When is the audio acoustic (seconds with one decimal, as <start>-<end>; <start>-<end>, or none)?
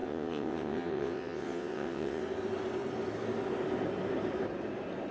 2.2-5.1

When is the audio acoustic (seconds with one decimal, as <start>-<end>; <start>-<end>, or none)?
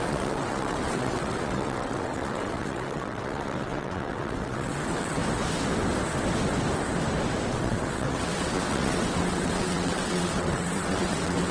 5.2-7.5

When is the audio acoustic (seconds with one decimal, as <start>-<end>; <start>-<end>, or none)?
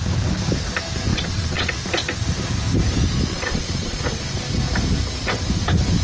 0.0-1.1; 1.7-3.3; 4.0-6.0